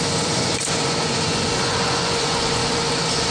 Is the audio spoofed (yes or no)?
yes